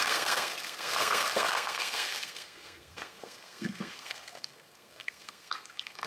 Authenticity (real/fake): fake